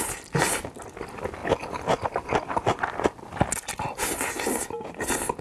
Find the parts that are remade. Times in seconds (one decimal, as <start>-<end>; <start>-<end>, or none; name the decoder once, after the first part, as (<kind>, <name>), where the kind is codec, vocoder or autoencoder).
none